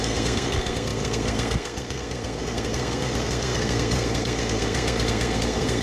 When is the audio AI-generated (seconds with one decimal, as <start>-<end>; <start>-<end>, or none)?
0.0-5.8